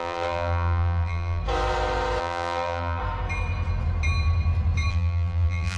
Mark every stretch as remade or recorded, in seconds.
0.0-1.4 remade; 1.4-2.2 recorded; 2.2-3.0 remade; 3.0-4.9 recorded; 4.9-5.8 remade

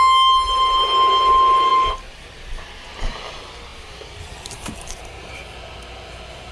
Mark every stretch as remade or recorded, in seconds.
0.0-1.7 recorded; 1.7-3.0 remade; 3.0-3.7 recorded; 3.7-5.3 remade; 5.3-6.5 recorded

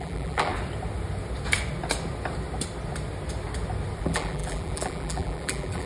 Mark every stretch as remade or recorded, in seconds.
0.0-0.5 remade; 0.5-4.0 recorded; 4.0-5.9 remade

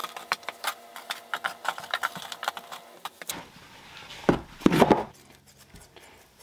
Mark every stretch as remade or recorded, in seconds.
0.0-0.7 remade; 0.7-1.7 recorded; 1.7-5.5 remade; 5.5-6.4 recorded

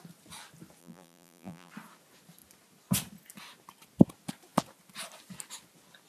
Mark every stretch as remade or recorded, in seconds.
0.0-0.8 recorded; 0.8-1.7 remade; 1.7-6.1 recorded